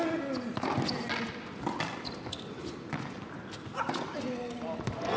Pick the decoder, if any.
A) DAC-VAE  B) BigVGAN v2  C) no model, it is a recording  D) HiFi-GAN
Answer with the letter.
C